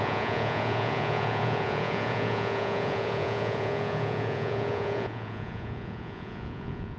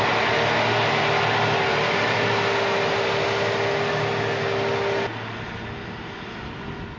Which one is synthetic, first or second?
first